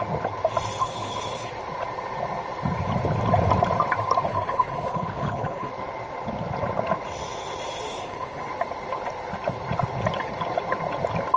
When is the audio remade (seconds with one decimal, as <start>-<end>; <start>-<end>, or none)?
0.8-1.5; 4.3-5.7; 7.9-8.5

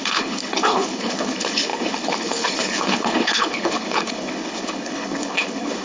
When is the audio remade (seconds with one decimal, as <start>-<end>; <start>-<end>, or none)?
0.0-5.8